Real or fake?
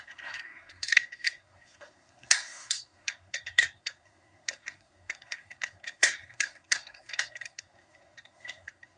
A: fake